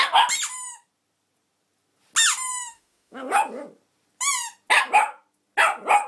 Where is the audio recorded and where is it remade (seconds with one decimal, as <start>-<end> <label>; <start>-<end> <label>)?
0.0-2.5 recorded; 2.5-3.3 remade; 3.3-6.1 recorded